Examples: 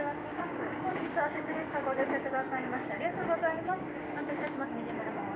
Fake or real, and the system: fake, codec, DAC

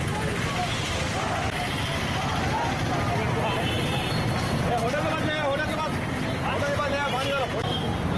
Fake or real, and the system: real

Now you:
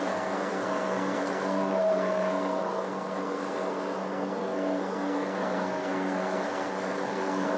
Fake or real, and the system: fake, codec, SNAC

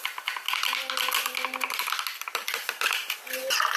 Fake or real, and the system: real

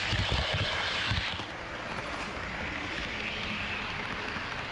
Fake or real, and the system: real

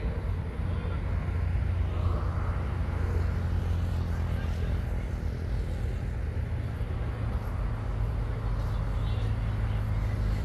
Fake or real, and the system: real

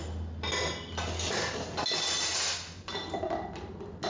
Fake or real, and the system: real